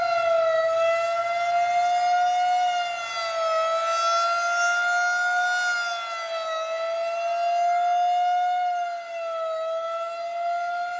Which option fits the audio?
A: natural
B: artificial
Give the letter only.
A